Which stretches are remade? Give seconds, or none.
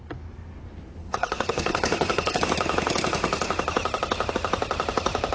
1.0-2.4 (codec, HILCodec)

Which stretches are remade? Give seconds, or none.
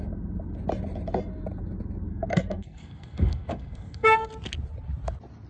2.1-4.3 (codec, SNAC)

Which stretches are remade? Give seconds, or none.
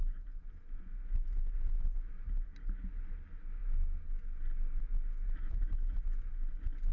none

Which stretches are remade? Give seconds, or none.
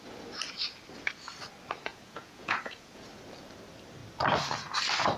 1.9-3.0 (vocoder, Vocos)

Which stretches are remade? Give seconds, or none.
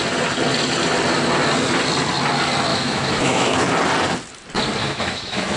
2.7-3.7 (autoencoder, DAC-VAE); 4.8-5.6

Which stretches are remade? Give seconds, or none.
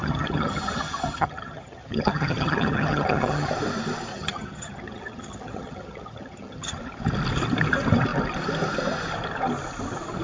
0.0-3.5 (vocoder, HiFi-GAN); 4.1-6.8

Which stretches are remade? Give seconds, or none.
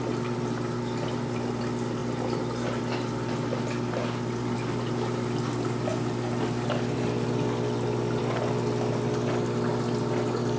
none